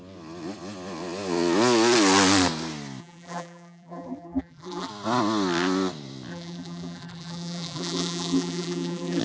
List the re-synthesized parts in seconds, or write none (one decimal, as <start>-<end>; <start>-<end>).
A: 3.0-4.9; 6.3-9.2